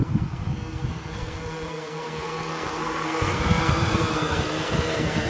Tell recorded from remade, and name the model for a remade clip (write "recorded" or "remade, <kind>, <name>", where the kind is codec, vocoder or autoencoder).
remade, codec, SNAC